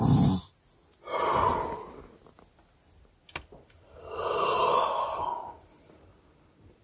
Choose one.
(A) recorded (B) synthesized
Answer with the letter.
A